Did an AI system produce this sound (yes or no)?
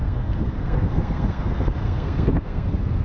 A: yes